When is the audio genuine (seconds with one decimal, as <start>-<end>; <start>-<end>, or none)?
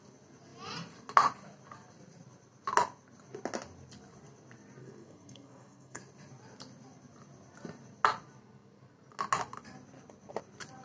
0.0-4.8; 6.0-10.8